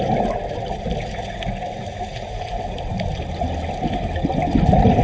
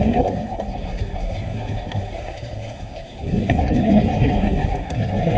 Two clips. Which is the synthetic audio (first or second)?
second